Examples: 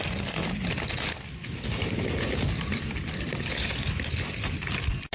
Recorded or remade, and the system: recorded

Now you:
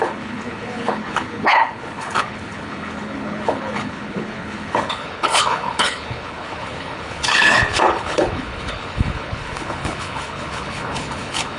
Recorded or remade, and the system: remade, codec, HILCodec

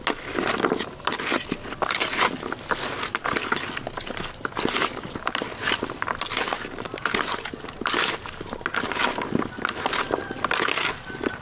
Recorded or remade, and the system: recorded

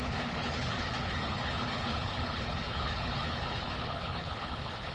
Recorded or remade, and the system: remade, codec, HILCodec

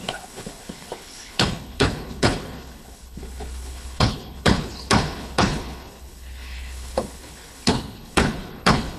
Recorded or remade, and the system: remade, codec, HILCodec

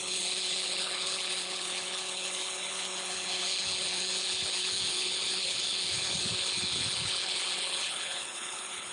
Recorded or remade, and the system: remade, codec, HILCodec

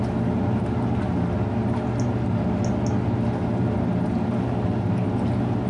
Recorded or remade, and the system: recorded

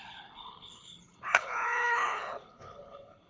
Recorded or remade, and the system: remade, codec, HILCodec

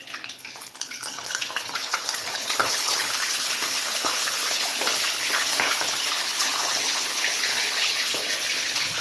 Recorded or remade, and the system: remade, codec, HILCodec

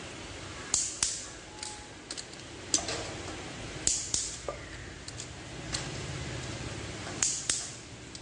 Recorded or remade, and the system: recorded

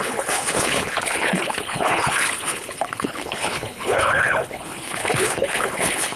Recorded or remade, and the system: remade, codec, HILCodec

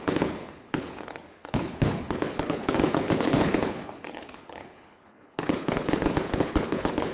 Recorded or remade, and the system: remade, codec, HILCodec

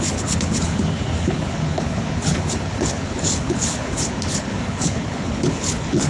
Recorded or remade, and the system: remade, codec, HILCodec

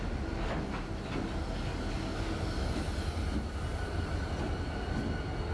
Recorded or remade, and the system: recorded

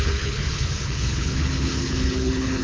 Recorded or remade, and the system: remade, codec, HILCodec